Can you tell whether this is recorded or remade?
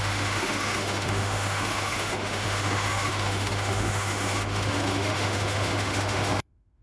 remade